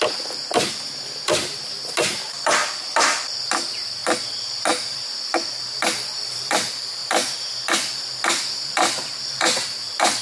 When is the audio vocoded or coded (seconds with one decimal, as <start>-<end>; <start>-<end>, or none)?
0.0-2.6; 3.5-4.0; 5.0-7.0; 8.6-10.2